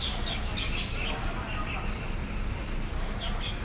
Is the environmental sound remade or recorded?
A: recorded